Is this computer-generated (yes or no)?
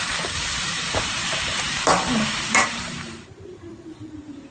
yes